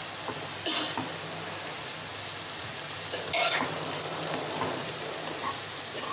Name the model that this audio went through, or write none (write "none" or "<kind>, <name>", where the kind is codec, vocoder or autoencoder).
none